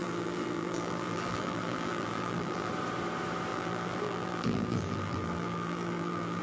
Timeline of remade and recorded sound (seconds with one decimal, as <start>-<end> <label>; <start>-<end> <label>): 0.0-2.7 remade; 2.7-3.5 recorded; 3.5-6.4 remade